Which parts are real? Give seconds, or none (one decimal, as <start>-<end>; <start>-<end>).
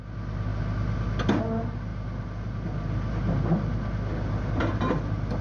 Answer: 0.0-5.4